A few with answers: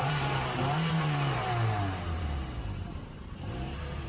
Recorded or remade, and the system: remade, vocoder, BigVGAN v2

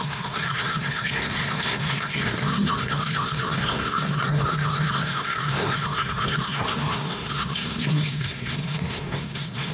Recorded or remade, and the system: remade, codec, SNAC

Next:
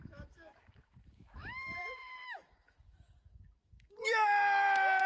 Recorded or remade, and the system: remade, autoencoder, DAC-VAE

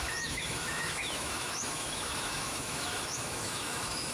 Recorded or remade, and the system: remade, autoencoder, DAC-VAE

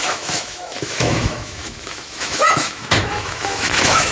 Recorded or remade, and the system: remade, autoencoder, DAC-VAE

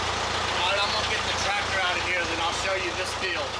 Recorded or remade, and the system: recorded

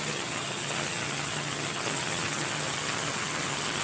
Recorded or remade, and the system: remade, vocoder, HiFi-GAN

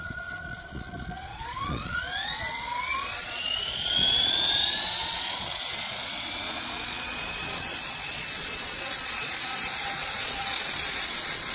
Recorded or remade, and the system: remade, vocoder, Vocos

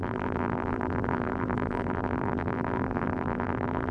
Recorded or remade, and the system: remade, vocoder, BigVGAN v2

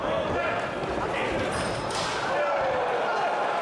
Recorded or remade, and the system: recorded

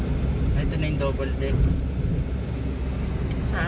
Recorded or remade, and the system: recorded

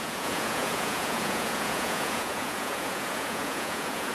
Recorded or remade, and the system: remade, vocoder, Vocos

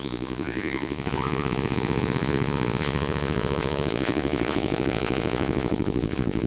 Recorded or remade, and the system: remade, vocoder, Vocos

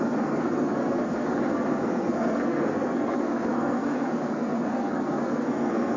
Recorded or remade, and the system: remade, codec, SNAC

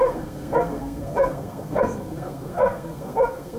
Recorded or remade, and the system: remade, codec, SNAC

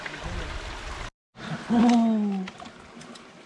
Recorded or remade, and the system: recorded